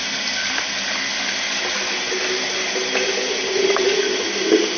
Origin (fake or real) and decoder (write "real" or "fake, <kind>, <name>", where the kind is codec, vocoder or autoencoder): real